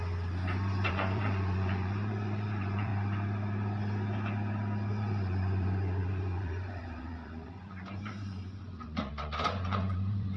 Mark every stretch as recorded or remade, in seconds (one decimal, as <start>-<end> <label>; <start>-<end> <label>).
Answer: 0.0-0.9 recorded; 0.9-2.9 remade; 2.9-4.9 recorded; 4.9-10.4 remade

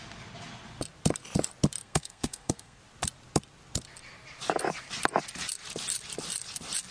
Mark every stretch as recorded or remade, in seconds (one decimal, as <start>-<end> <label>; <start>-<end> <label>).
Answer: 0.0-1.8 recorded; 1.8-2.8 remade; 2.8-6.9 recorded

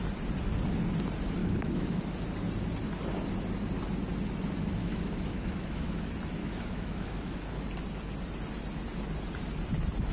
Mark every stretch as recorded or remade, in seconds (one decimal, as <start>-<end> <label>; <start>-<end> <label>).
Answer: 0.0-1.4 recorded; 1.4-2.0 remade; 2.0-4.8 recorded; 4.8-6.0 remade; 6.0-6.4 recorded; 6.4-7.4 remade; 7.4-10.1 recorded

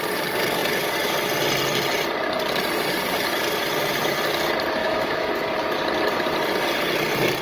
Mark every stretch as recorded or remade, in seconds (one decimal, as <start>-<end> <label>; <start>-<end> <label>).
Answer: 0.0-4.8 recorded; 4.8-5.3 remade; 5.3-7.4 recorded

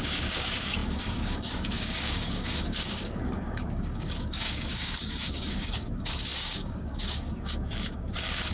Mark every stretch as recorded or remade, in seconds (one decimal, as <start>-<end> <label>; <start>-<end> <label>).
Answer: 0.0-8.5 remade